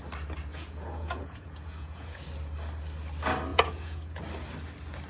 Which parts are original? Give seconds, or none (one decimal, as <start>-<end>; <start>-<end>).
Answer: 0.0-0.5; 2.2-3.5; 4.2-5.1